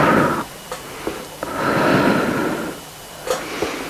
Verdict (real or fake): real